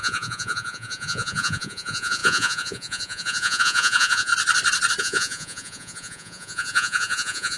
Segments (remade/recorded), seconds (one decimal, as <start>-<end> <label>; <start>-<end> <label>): 0.0-4.3 remade; 4.3-5.0 recorded; 5.0-7.6 remade